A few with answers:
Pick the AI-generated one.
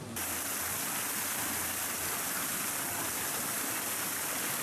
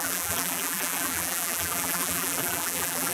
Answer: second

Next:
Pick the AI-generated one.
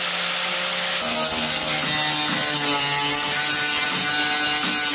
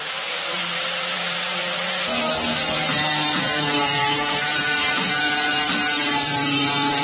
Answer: second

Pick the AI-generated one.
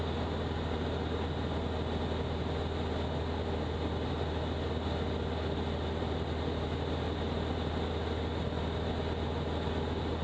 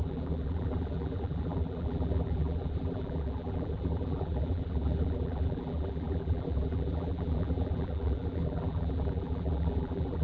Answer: second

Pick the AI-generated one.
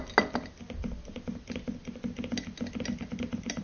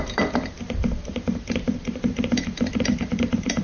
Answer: second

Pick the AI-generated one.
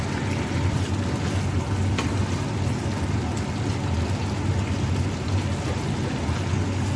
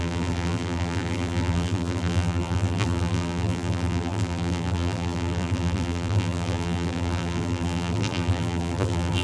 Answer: second